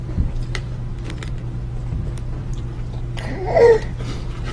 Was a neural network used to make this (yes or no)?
yes